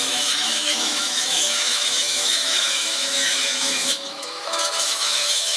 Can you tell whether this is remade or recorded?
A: remade